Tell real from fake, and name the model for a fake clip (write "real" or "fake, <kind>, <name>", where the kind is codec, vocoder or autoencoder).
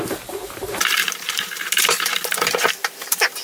fake, vocoder, BigVGAN v2